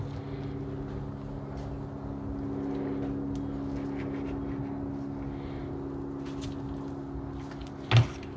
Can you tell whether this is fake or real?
real